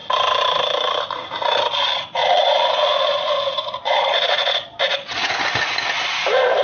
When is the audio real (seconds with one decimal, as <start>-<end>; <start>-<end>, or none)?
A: 0.0-2.2; 3.3-3.8; 5.3-6.6

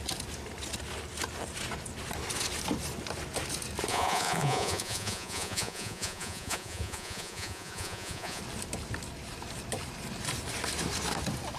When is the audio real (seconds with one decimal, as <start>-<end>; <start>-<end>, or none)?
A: 0.0-3.9; 8.4-11.6

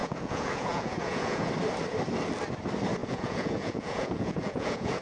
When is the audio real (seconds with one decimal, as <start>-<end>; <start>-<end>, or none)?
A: 1.5-3.0

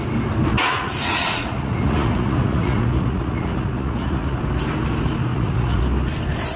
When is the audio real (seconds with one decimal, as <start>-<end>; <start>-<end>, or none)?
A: 0.0-0.5; 4.4-5.3; 5.8-6.6